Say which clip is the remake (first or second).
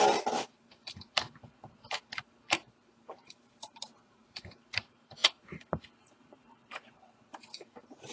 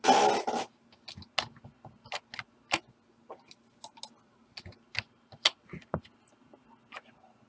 first